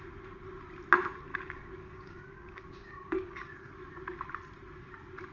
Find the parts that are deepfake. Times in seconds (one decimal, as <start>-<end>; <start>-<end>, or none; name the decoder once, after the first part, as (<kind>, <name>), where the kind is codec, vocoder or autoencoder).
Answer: 1.3-3.7 (codec, DAC)